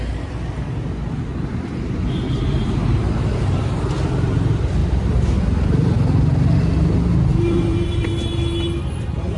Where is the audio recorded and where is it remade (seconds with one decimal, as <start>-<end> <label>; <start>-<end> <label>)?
0.0-1.3 recorded; 1.3-3.8 remade; 3.8-7.3 recorded; 7.3-8.1 remade; 8.1-9.4 recorded